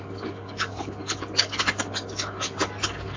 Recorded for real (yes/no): no